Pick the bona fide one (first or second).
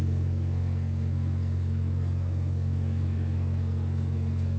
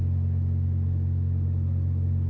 second